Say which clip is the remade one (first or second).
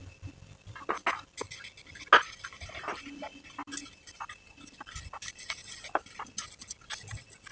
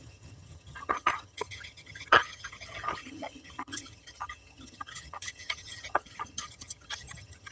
second